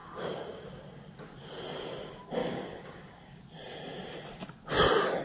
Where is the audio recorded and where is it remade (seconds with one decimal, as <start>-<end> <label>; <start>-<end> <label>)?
0.0-0.8 remade; 0.8-2.4 recorded; 2.4-3.4 remade; 3.4-5.2 recorded